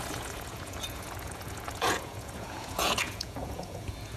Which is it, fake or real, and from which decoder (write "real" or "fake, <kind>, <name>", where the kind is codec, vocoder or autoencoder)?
fake, vocoder, Vocos